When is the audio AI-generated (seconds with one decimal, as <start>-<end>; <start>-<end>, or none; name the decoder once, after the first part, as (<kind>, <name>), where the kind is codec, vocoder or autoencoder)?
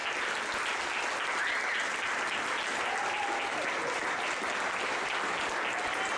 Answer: none